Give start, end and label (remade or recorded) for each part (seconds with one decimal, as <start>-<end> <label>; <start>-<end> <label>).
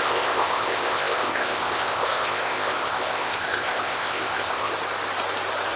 0.0-4.7 remade; 4.7-5.8 recorded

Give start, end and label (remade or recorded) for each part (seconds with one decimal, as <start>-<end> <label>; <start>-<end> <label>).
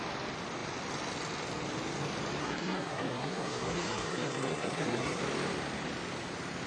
0.0-2.4 recorded; 2.4-5.2 remade; 5.2-6.7 recorded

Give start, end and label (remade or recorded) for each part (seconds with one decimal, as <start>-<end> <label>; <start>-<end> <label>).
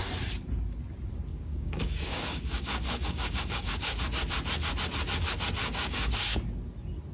0.0-1.3 recorded; 1.3-4.0 remade; 4.0-5.6 recorded; 5.6-6.1 remade; 6.1-7.1 recorded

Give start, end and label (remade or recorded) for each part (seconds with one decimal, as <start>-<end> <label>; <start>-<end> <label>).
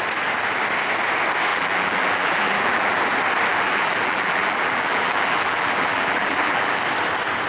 0.0-1.5 recorded; 1.5-3.1 remade; 3.1-3.5 recorded; 3.5-6.8 remade; 6.8-7.5 recorded